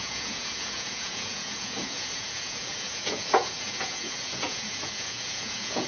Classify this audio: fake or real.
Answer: fake